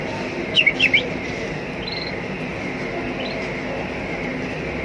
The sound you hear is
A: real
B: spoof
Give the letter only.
A